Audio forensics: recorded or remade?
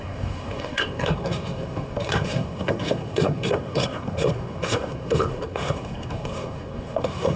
remade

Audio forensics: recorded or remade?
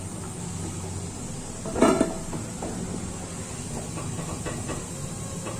recorded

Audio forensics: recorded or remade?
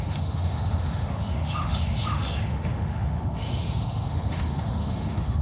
remade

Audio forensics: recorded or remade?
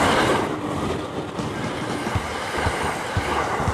recorded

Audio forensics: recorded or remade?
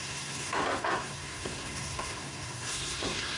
remade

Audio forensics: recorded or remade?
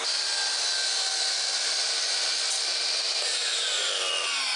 recorded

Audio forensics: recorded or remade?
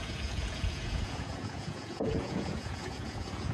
remade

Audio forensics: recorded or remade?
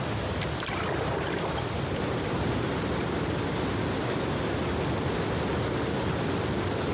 recorded